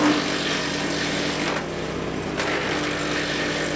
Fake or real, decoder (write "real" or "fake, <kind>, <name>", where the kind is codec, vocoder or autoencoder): real